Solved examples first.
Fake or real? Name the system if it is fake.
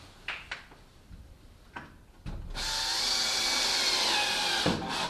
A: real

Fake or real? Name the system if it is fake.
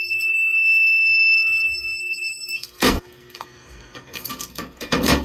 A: fake, codec, SNAC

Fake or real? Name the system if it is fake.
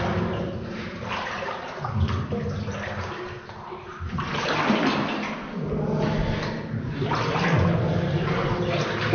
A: real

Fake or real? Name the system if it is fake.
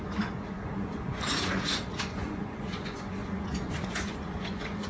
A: fake, vocoder, Vocos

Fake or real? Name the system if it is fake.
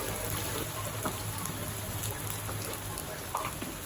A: real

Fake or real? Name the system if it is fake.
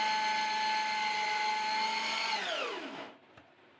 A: real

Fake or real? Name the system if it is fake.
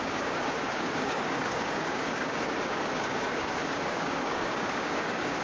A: fake, codec, DAC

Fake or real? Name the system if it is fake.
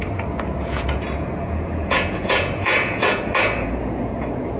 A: fake, vocoder, Vocos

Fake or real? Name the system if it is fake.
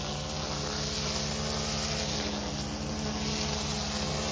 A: real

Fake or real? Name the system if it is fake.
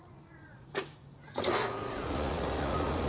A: fake, vocoder, Vocos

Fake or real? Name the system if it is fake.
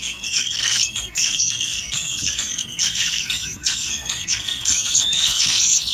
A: fake, codec, SNAC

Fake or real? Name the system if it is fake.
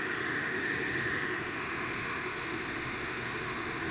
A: fake, autoencoder, DAC-VAE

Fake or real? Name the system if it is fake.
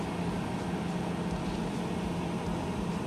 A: real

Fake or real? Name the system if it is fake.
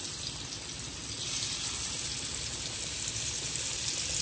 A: real